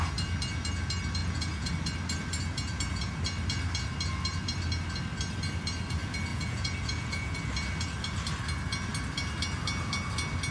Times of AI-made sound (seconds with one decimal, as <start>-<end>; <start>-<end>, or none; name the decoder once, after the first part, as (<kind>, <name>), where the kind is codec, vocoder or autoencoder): 1.2-1.7 (vocoder, Vocos); 6.3-7.4